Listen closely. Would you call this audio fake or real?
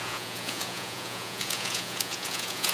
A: fake